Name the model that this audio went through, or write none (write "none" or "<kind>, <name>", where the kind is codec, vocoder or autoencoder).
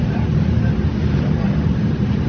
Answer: none